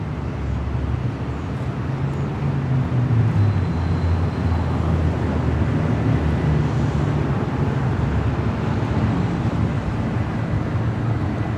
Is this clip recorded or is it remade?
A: recorded